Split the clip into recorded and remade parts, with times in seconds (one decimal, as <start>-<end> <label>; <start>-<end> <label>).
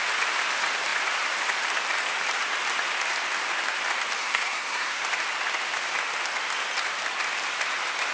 0.0-4.2 recorded; 4.2-5.0 remade; 5.0-8.1 recorded